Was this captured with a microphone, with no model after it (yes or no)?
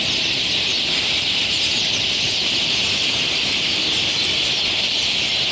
no